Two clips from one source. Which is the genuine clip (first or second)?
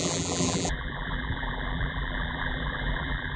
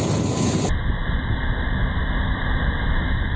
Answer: second